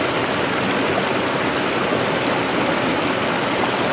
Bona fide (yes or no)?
yes